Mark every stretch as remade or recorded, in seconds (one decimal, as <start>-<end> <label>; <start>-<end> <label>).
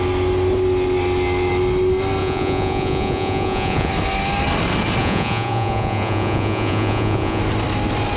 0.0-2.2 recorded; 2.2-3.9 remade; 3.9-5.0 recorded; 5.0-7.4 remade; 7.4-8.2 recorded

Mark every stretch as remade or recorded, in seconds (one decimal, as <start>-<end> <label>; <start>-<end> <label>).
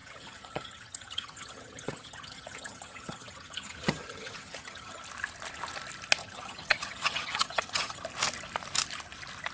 0.0-5.0 remade; 5.0-6.2 recorded; 6.2-8.0 remade; 8.0-9.5 recorded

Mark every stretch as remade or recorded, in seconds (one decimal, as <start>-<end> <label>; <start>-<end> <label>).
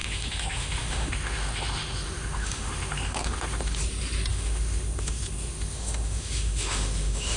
0.0-3.8 remade; 3.8-4.3 recorded; 4.3-7.4 remade